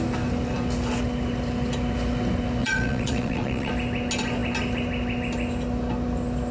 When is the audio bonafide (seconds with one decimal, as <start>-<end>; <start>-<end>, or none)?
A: 0.0-2.6; 3.7-6.5